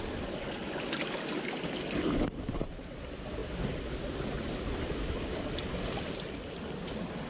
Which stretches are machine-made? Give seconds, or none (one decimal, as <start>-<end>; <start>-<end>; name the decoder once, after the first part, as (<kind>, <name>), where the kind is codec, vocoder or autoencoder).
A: none